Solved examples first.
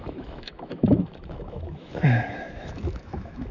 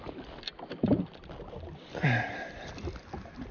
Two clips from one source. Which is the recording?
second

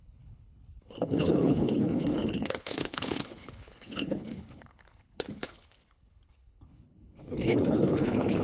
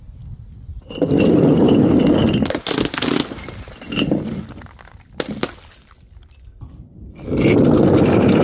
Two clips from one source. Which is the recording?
second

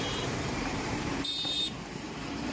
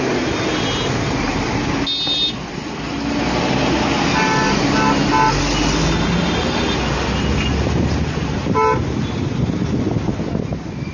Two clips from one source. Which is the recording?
second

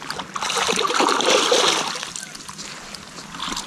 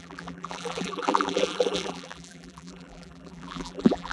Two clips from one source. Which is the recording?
first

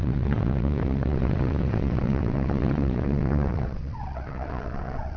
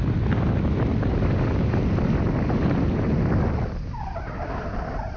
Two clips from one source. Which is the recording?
second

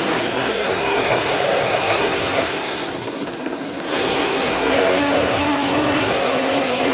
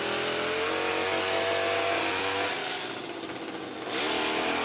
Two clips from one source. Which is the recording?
second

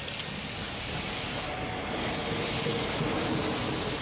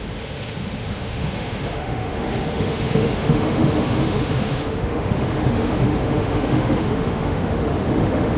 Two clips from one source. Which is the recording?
first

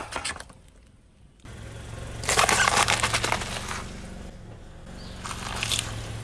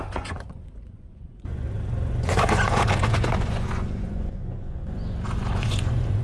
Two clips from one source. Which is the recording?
first